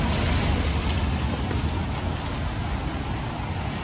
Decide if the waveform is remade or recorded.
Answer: recorded